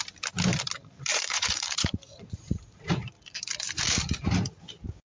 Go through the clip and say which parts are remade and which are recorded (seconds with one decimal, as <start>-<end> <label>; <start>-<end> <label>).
0.0-1.1 recorded; 1.1-3.1 remade; 3.1-5.1 recorded